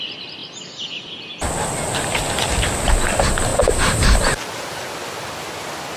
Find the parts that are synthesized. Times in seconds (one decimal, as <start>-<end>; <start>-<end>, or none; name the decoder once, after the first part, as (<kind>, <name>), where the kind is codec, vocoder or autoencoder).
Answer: 3.5-4.8 (vocoder, BigVGAN v2)